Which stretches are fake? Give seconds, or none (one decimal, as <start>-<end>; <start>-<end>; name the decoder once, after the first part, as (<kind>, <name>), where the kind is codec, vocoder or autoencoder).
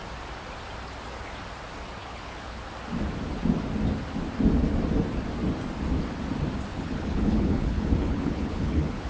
2.0-2.7 (codec, HILCodec); 6.7-9.1